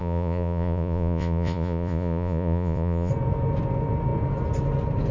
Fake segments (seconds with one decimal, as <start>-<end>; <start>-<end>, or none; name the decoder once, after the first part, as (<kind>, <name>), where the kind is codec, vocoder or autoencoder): 0.0-3.1 (vocoder, Vocos)